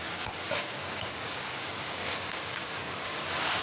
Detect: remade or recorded remade